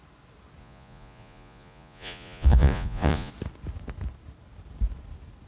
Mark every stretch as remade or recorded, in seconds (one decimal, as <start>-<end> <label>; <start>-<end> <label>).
0.0-0.6 recorded; 0.6-3.3 remade; 3.3-5.5 recorded